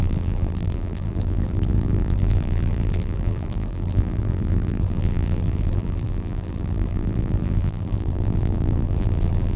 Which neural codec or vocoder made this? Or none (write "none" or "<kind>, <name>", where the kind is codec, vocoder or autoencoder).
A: vocoder, BigVGAN v2